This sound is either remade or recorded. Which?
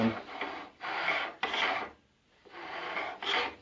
recorded